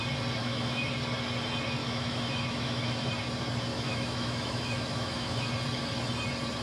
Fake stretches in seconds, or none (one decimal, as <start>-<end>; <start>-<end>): 0.4-0.9; 1.8-3.1; 3.7-5.5